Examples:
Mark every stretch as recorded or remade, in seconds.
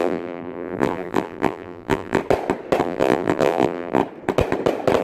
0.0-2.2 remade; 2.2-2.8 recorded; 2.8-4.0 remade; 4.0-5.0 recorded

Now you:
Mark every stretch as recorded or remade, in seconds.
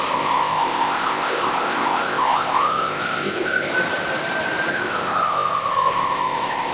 0.0-3.7 remade; 3.7-4.7 recorded; 4.7-6.7 remade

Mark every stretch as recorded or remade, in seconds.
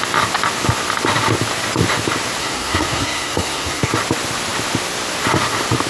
0.0-2.4 recorded; 2.4-3.9 remade; 3.9-5.9 recorded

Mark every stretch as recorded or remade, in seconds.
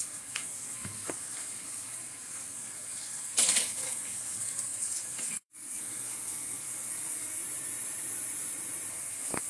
0.0-7.4 remade; 7.4-8.9 recorded; 8.9-9.5 remade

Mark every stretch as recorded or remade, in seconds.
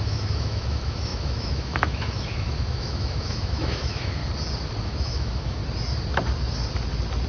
0.0-4.2 remade; 4.2-4.8 recorded; 4.8-5.6 remade; 5.6-7.3 recorded